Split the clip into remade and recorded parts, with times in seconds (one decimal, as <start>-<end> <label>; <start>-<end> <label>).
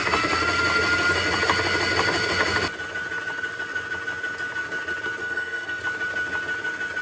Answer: 0.0-5.2 recorded; 5.2-5.8 remade; 5.8-7.0 recorded